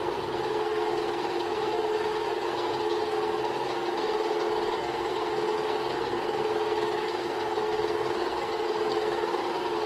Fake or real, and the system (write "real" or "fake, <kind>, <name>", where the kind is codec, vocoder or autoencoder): fake, codec, SNAC